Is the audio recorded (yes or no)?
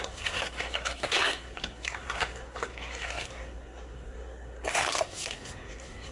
no